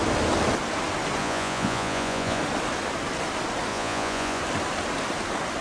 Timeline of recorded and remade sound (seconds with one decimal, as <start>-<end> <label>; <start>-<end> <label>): 0.0-1.2 recorded; 1.2-2.4 remade; 2.4-3.7 recorded; 3.7-4.4 remade; 4.4-5.6 recorded